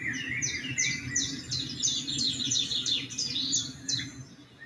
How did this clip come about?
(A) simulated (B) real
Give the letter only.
B